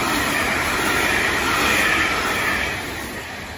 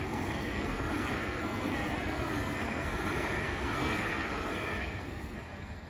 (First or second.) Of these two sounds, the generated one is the second